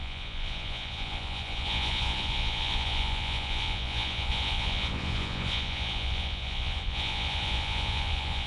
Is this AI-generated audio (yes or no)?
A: yes